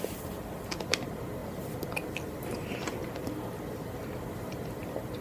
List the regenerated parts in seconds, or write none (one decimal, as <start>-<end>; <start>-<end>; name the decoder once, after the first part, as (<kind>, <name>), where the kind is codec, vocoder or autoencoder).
none